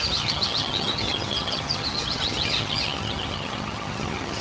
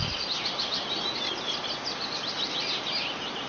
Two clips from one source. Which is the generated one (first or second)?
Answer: first